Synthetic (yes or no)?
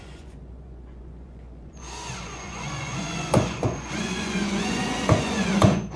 yes